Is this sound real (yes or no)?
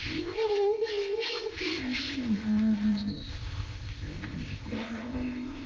no